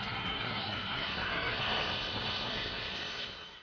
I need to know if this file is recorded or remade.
remade